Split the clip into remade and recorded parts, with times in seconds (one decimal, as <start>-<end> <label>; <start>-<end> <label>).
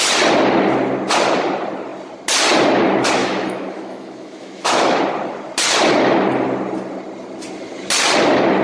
0.0-3.2 recorded; 3.2-5.0 remade; 5.0-8.6 recorded